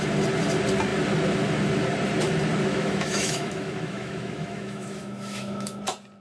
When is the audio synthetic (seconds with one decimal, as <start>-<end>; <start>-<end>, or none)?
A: 2.7-5.8